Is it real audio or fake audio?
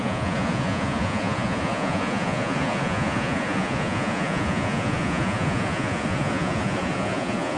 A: fake